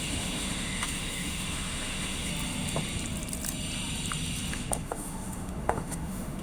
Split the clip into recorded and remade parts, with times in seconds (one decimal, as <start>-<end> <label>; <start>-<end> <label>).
0.0-2.3 remade; 2.3-4.5 recorded; 4.5-6.4 remade